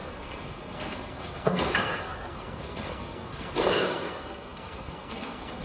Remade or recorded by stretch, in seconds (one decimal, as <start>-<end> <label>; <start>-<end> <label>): 0.0-5.6 remade